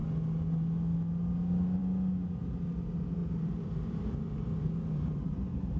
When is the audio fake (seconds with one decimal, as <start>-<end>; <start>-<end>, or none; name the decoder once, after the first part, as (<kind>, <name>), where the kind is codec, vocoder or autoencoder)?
3.2-5.8 (vocoder, BigVGAN v2)